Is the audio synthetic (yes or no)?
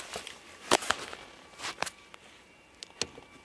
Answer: no